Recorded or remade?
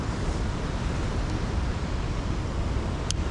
recorded